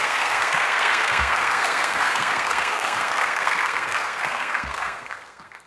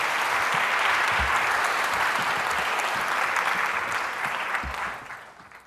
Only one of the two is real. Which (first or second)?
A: second